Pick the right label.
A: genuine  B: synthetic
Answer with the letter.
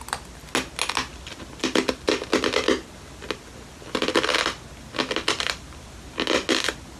A